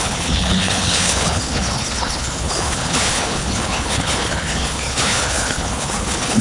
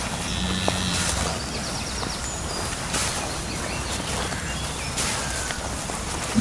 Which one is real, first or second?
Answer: second